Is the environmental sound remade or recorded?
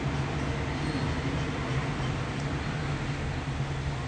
recorded